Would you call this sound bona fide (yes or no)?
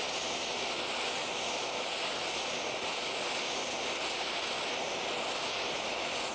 yes